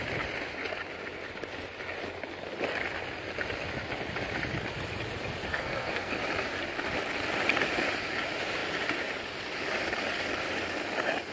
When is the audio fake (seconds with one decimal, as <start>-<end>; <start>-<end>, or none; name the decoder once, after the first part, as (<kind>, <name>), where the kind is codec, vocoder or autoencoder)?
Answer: 5.5-6.2 (codec, SNAC)